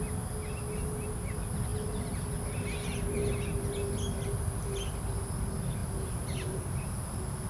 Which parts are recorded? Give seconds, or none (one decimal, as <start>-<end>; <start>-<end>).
0.0-7.5